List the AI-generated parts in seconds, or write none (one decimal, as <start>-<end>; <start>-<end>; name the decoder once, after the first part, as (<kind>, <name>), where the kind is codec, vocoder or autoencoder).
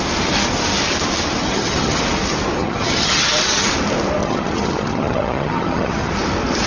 1.4-2.0 (vocoder, HiFi-GAN); 2.6-3.3; 4.2-6.1